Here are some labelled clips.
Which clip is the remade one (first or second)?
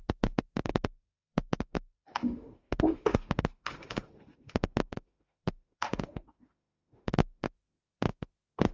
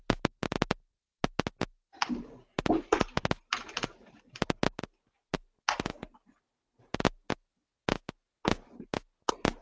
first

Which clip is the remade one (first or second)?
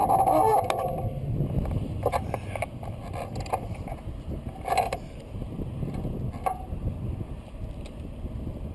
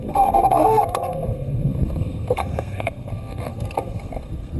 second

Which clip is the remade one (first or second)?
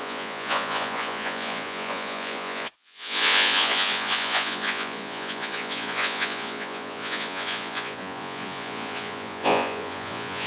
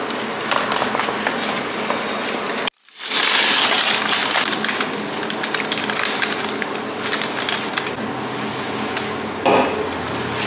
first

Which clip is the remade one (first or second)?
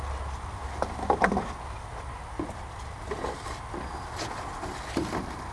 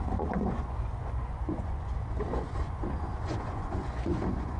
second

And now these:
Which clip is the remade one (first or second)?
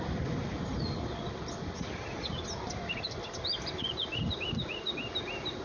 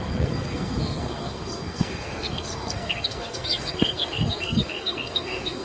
second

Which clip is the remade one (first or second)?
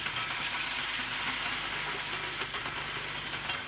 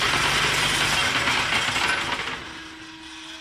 second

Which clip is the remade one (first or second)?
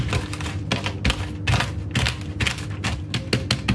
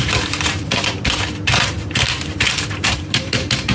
second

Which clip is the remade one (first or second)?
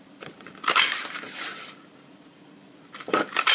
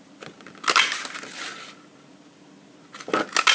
first